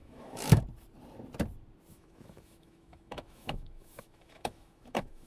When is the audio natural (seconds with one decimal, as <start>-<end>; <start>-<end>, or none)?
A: 0.6-1.9